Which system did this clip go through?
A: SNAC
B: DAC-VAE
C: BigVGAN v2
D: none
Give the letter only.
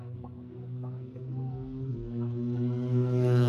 A